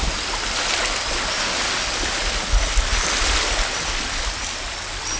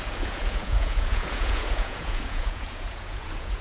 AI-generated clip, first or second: second